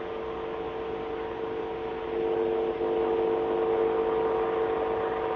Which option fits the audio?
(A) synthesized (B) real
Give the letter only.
B